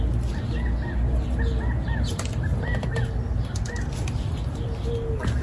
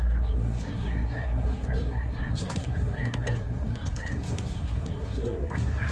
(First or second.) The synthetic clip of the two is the second